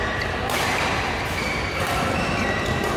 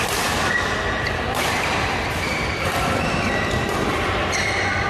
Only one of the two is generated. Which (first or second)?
second